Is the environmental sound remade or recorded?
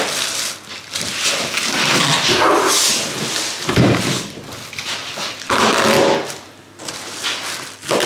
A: recorded